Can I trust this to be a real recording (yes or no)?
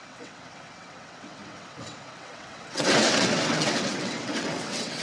no